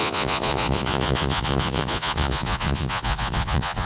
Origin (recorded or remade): remade